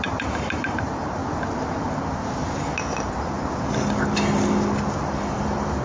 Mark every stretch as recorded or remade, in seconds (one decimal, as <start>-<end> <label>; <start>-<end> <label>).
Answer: 0.0-1.2 remade; 1.2-1.8 recorded; 1.8-2.4 remade; 2.4-5.3 recorded; 5.3-5.8 remade